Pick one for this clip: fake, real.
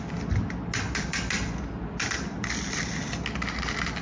real